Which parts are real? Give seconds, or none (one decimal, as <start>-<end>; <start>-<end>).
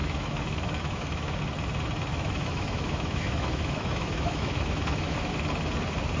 1.4-2.1; 5.3-6.2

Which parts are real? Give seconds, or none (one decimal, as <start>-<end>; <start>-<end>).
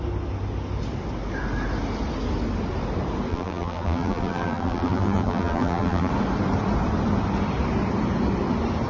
0.0-3.3; 6.1-8.9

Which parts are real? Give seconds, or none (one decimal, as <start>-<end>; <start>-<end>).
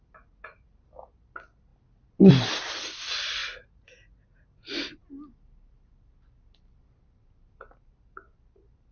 0.0-3.4; 5.1-8.9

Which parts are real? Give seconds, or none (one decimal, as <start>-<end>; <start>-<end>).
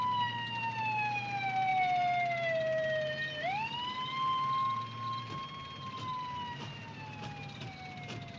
0.0-8.4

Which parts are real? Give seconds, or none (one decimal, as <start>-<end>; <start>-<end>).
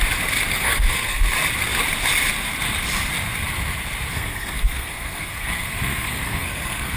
0.0-0.5; 1.2-4.1